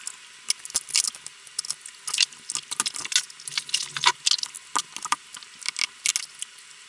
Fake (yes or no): no